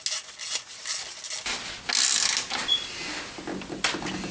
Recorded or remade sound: recorded